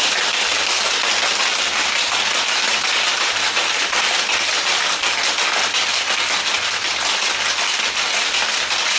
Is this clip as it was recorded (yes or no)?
yes